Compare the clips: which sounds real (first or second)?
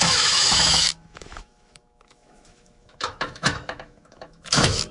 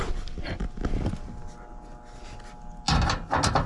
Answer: second